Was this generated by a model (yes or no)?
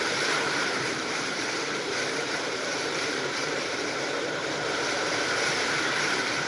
yes